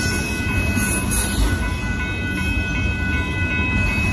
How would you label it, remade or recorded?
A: recorded